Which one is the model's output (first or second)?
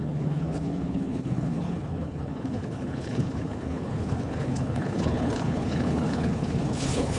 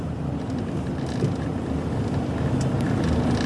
first